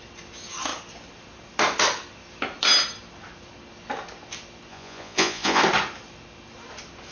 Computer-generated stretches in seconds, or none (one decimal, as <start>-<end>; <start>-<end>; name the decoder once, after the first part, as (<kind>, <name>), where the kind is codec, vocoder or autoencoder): 4.7-5.6 (vocoder, Vocos)